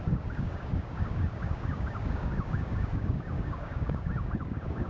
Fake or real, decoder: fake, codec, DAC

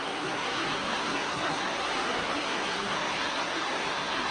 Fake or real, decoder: fake, codec, SNAC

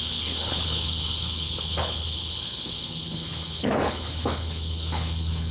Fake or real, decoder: fake, codec, HILCodec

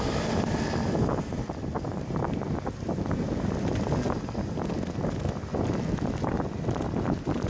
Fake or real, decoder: real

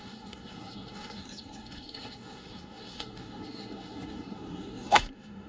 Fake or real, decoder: fake, codec, SNAC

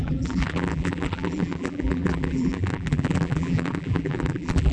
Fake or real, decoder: fake, vocoder, BigVGAN v2